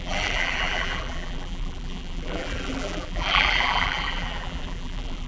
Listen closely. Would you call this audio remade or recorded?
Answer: remade